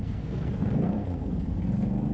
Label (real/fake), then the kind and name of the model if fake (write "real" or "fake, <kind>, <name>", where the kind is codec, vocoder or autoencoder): fake, codec, SNAC